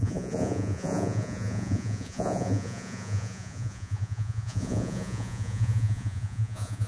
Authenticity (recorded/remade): remade